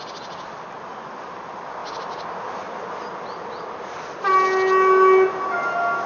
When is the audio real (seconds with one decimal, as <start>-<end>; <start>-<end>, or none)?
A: 0.0-6.1